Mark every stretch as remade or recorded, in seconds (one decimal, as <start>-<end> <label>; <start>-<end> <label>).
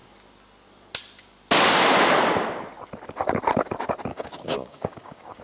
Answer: 0.0-4.1 recorded; 4.1-5.4 remade